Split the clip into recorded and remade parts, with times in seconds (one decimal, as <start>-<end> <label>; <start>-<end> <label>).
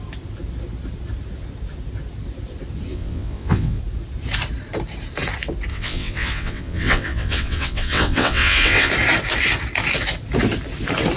0.0-2.9 recorded; 2.9-3.8 remade; 3.8-5.7 recorded; 5.7-8.9 remade; 8.9-11.2 recorded